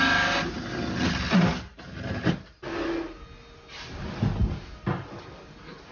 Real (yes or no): yes